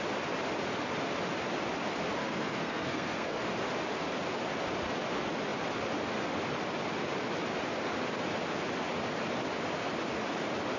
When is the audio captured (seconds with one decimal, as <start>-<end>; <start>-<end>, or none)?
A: 0.0-2.2; 3.4-10.8